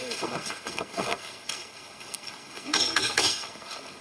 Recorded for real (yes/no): no